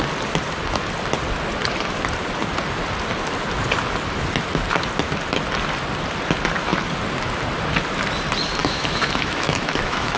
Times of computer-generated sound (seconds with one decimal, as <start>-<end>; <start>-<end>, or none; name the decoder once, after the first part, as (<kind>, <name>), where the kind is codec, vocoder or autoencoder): 8.6-10.2 (autoencoder, DAC-VAE)